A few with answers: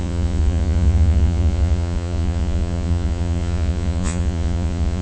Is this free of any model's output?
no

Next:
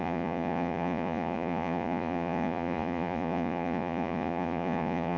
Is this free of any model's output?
no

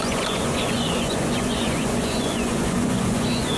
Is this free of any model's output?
no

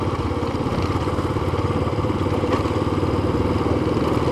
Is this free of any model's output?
yes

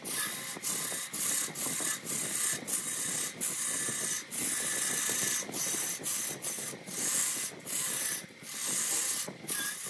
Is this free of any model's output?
yes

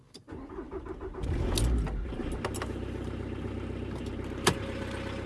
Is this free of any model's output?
yes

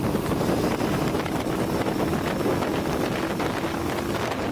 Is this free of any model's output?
yes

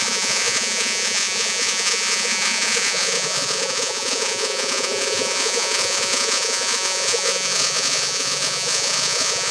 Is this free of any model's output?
no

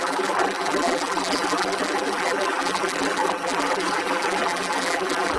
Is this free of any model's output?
no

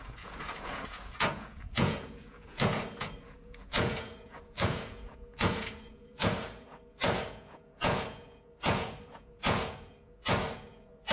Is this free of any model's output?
no